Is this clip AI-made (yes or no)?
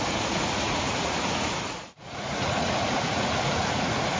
yes